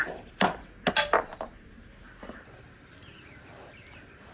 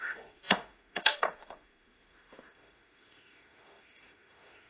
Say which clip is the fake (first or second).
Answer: second